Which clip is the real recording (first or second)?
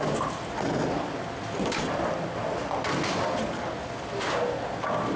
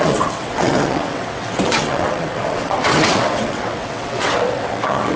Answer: first